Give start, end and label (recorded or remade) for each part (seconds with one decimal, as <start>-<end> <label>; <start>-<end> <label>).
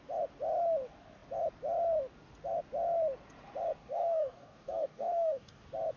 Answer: 0.0-3.8 recorded; 3.8-5.6 remade; 5.6-6.0 recorded